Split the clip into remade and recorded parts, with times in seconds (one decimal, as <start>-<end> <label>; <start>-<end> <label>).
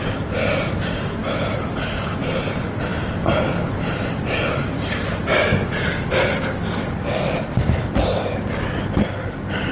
0.0-9.7 recorded